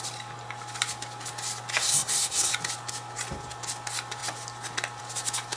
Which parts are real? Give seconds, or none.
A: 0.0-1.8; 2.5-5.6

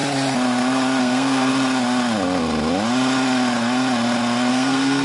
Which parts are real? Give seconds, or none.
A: 0.0-1.0; 1.5-4.5

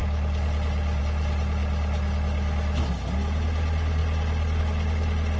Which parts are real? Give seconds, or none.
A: 0.0-5.4

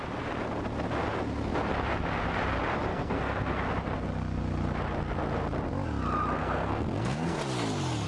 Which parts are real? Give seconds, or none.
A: 0.0-2.9; 3.7-6.4; 7.4-8.1